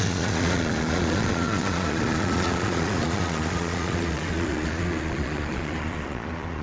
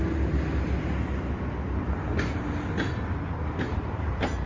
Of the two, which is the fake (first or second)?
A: first